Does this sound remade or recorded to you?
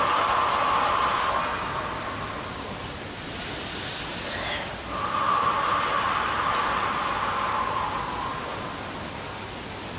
recorded